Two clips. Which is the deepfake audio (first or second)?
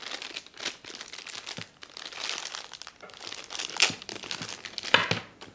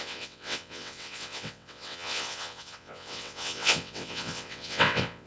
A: second